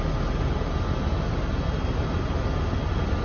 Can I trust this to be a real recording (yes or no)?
yes